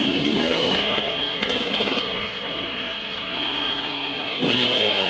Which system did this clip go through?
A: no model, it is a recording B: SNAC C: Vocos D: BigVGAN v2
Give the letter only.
B